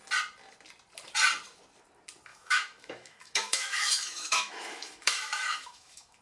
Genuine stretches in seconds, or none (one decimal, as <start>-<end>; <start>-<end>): 0.0-2.3